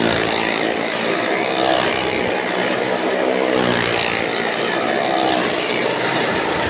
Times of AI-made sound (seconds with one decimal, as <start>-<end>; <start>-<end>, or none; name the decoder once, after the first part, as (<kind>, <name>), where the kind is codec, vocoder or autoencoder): 5.8-6.7 (vocoder, BigVGAN v2)